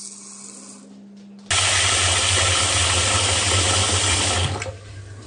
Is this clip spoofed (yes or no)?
no